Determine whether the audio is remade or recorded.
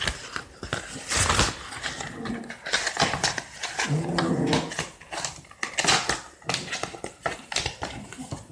recorded